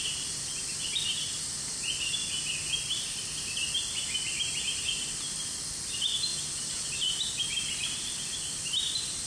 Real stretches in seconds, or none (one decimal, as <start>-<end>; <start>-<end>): 2.2-5.3; 6.3-7.2